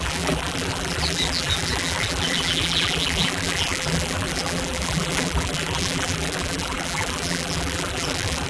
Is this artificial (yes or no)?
yes